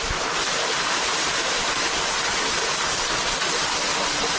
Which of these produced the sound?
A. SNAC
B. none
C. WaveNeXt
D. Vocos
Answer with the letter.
B